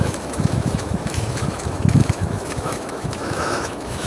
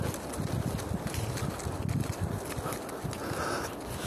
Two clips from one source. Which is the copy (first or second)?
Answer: first